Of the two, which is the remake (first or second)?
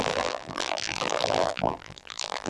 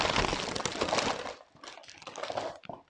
first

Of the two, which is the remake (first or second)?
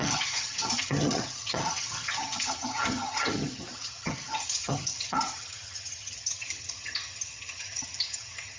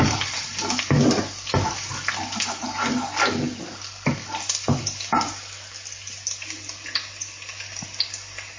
first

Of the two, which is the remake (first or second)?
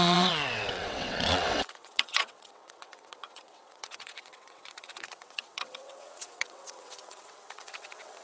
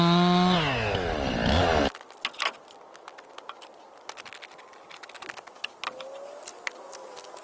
first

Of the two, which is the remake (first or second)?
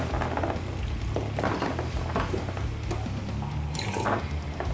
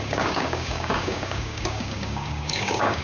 second